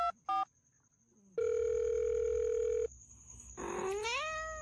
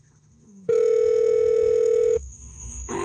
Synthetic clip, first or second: second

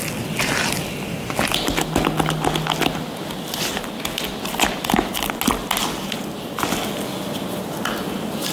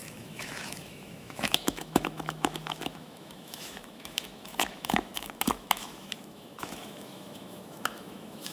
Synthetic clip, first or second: second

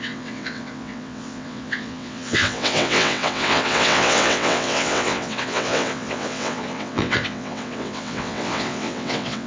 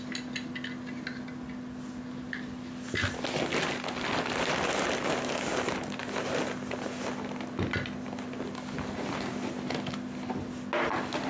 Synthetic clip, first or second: first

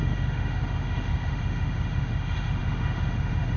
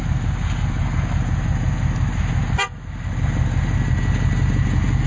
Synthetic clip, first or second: first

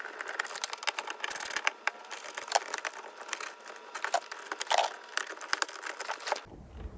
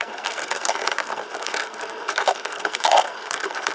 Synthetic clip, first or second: second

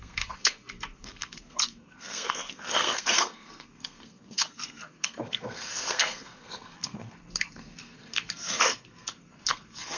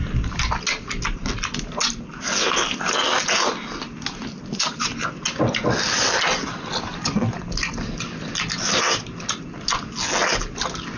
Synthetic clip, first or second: first